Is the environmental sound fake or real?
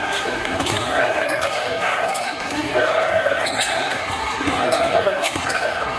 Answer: fake